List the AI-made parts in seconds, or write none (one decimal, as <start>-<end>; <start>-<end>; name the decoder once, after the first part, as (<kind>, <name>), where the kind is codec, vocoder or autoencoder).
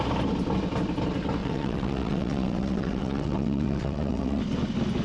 1.4-4.4 (vocoder, WaveNeXt)